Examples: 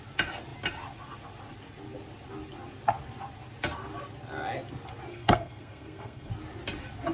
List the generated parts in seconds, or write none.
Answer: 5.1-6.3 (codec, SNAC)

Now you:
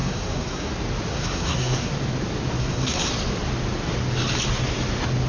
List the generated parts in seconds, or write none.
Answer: 0.0-0.7 (codec, SNAC); 1.1-1.9; 2.6-3.1